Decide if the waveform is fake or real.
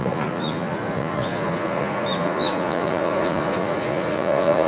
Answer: fake